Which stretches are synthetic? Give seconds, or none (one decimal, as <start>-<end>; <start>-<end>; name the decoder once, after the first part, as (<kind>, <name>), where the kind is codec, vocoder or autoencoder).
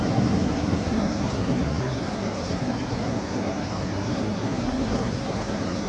0.0-5.9 (codec, SNAC)